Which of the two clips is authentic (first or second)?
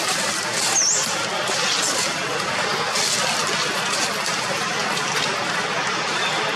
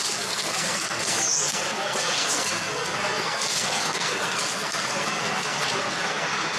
first